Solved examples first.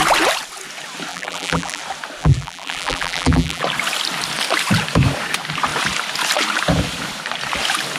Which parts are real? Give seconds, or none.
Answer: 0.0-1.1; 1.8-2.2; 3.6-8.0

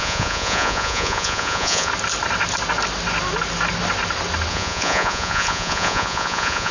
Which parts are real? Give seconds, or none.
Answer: 1.9-4.5

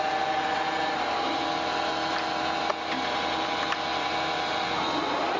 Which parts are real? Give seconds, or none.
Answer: 0.0-5.4

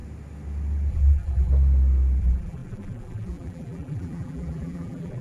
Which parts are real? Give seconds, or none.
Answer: 0.0-0.9; 1.5-2.2

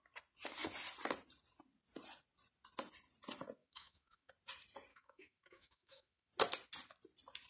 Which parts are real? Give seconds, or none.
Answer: 0.0-3.6; 4.3-4.9; 6.3-7.5

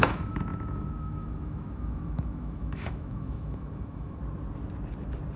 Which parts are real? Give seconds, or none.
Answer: 4.2-5.4

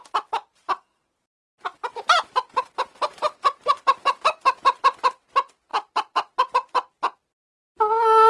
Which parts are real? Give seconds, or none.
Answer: 0.0-0.5; 1.5-8.3